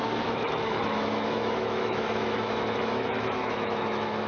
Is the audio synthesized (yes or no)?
yes